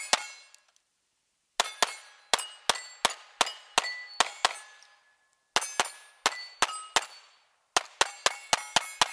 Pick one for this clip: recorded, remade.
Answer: recorded